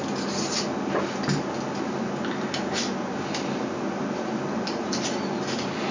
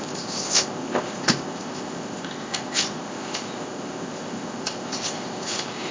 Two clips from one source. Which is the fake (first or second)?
second